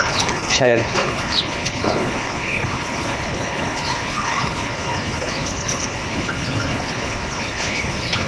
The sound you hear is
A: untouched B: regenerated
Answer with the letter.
B